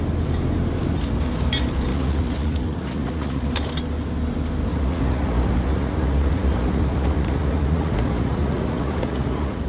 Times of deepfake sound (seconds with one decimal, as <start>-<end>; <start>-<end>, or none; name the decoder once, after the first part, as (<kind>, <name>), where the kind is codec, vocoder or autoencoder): 1.9-3.5 (vocoder, Vocos); 4.7-9.7